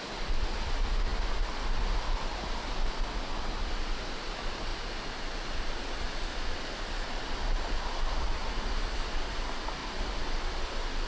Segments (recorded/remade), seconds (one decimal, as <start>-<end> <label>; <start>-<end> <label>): 0.0-11.1 recorded